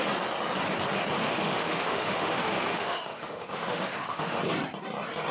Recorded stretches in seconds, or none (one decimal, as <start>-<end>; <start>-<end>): 0.0-1.2; 4.4-5.3